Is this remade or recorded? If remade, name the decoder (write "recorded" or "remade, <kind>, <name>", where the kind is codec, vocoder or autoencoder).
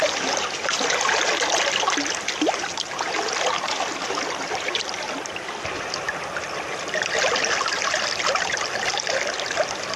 recorded